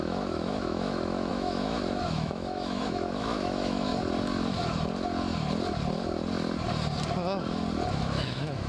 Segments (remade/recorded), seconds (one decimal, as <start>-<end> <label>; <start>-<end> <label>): 0.0-3.9 remade; 3.9-7.9 recorded; 7.9-8.7 remade